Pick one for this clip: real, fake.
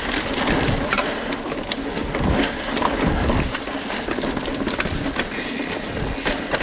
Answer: real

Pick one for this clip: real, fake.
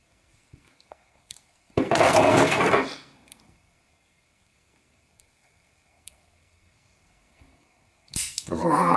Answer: fake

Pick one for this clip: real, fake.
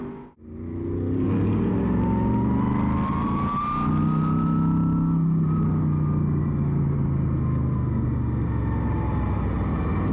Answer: real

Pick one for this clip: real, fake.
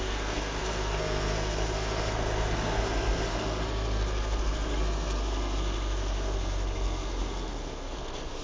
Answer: fake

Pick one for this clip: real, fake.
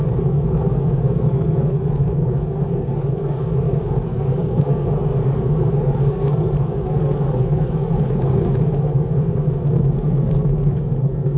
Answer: fake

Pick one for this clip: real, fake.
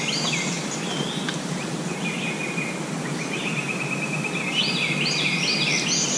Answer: real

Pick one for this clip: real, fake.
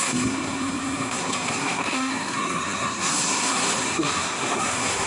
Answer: fake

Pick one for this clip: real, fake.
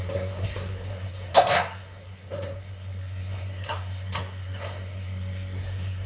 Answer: fake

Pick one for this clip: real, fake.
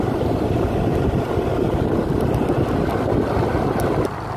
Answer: real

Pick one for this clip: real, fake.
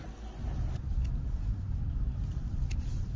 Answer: real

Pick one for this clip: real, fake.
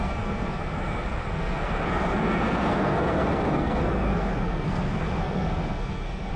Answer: fake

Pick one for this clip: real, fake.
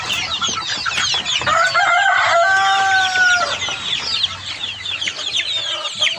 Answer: real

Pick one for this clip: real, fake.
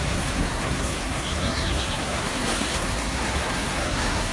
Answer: fake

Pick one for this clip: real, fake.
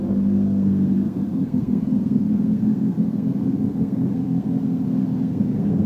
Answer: fake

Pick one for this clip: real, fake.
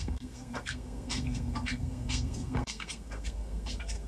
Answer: fake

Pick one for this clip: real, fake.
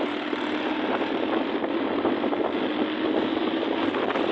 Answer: real